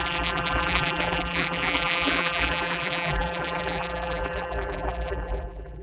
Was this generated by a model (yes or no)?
yes